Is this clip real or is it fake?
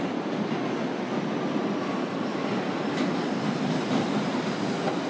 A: real